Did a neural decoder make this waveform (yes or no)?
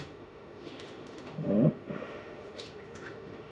yes